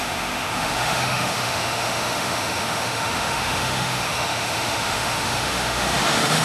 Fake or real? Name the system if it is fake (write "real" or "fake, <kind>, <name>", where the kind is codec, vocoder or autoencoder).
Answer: fake, autoencoder, DAC-VAE